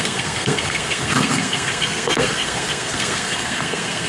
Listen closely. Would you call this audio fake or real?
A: fake